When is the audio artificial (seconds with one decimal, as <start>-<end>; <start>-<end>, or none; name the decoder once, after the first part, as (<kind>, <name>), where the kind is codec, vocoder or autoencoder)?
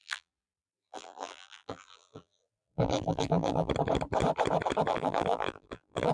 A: 0.0-3.7 (vocoder, BigVGAN v2); 4.9-6.1